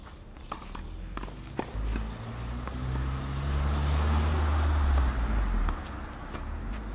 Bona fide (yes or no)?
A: yes